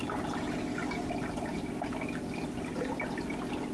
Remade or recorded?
recorded